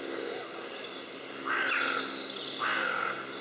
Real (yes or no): yes